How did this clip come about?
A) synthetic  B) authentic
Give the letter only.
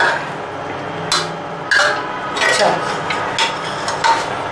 B